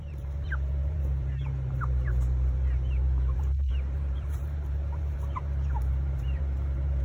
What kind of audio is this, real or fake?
fake